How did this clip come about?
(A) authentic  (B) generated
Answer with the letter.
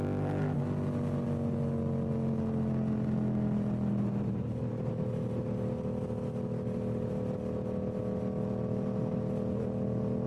A